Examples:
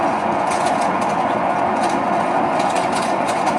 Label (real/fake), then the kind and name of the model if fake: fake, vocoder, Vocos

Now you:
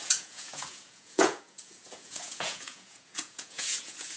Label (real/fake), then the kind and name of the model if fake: fake, vocoder, Vocos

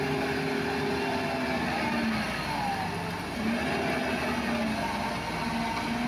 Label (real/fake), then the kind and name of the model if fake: real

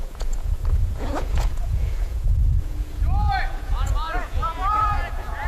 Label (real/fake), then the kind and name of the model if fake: fake, vocoder, Vocos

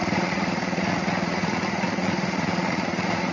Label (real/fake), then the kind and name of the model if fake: fake, vocoder, Vocos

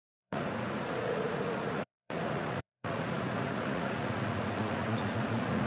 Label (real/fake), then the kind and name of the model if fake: fake, vocoder, Vocos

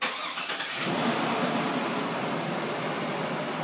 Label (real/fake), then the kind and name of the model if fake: real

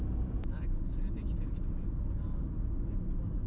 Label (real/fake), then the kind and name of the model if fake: real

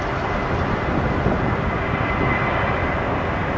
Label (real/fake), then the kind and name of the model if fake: real